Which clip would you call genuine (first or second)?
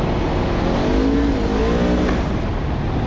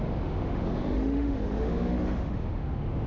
first